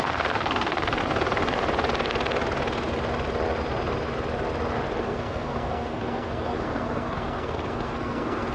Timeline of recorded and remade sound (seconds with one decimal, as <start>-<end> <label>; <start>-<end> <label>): 0.0-1.0 remade; 1.0-5.0 recorded; 5.0-8.5 remade